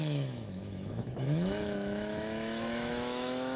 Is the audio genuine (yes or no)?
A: no